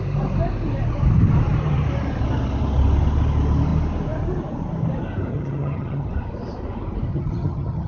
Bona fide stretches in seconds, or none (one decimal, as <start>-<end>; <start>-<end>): 0.0-5.3; 6.1-7.1